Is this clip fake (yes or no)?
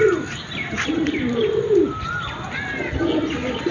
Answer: no